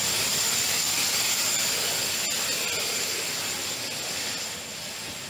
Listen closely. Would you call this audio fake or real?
real